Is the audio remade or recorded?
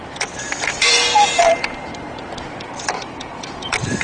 remade